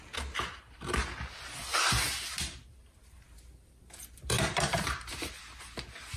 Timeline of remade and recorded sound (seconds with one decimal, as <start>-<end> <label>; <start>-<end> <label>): 0.0-1.7 recorded; 1.7-5.4 remade; 5.4-6.2 recorded